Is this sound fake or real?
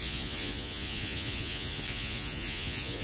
fake